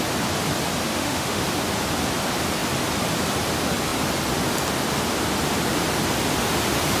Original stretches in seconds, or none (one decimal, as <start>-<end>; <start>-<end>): 0.0-0.9; 1.4-7.0